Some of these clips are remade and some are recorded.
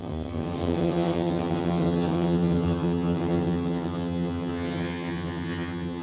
remade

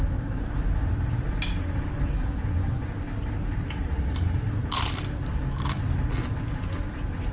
recorded